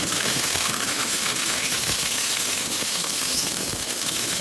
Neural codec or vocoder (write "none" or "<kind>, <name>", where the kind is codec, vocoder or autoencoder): autoencoder, DAC-VAE